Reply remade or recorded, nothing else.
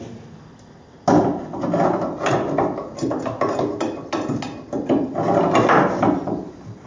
recorded